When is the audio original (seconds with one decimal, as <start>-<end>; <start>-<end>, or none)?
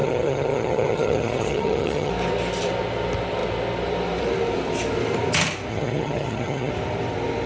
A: 2.1-5.7; 6.7-7.5